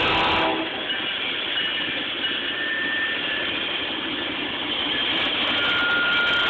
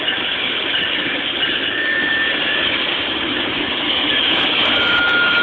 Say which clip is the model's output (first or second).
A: second